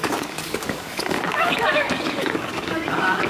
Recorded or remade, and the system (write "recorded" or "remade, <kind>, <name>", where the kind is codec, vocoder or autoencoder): remade, codec, DAC